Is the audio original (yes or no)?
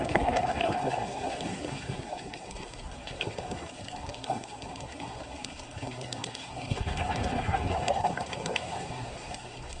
no